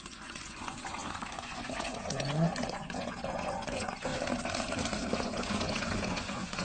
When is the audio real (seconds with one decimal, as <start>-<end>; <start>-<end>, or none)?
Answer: 4.1-5.2